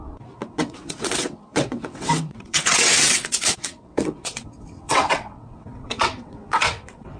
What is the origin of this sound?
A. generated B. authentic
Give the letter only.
A